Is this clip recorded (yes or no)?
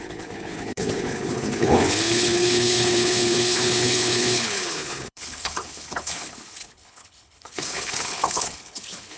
no